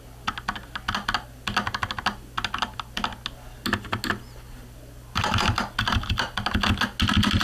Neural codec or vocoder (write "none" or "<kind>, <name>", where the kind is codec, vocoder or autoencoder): none